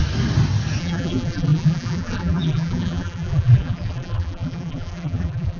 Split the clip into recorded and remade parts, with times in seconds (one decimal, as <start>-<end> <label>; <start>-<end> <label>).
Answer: 0.0-0.8 recorded; 0.8-5.6 remade